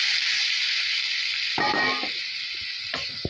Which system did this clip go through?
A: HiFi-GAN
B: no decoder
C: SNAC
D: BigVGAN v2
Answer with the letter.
B